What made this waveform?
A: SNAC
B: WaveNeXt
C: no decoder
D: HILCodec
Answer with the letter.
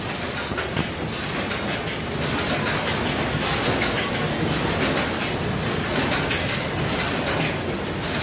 C